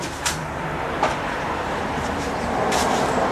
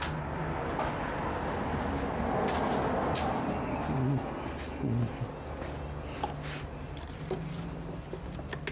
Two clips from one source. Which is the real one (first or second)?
second